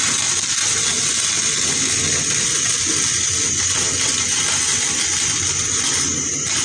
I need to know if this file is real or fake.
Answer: real